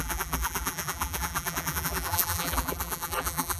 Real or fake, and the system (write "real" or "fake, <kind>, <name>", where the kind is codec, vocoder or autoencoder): fake, vocoder, BigVGAN v2